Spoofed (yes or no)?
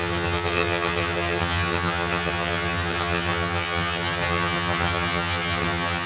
yes